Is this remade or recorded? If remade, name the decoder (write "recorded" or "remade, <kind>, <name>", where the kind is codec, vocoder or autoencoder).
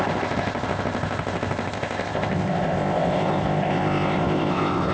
remade, codec, ZipCodec